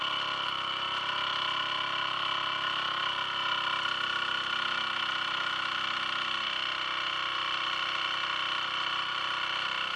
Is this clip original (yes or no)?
yes